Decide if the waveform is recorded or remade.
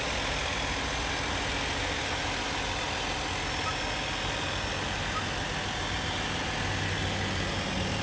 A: recorded